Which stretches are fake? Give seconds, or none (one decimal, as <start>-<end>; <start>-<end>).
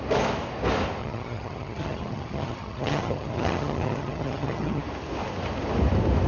1.0-4.8